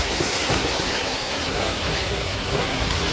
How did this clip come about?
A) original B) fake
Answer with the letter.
B